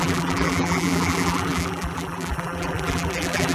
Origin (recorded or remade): remade